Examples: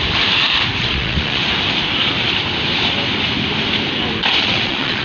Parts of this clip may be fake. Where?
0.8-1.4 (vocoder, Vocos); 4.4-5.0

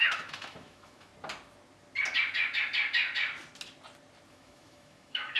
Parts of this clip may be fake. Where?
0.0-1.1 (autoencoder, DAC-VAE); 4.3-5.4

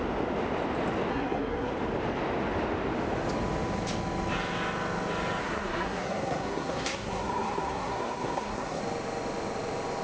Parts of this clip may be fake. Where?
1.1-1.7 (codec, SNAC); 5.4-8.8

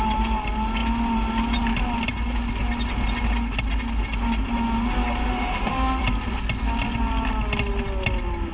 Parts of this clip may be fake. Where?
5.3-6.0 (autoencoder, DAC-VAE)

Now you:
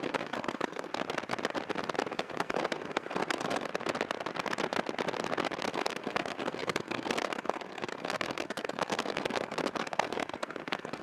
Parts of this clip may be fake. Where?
0.0-0.9 (codec, SNAC); 2.1-3.7; 5.7-11.0